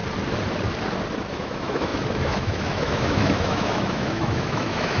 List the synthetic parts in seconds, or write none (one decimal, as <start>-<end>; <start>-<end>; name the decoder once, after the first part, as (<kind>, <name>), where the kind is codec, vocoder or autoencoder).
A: 1.3-5.0 (autoencoder, DAC-VAE)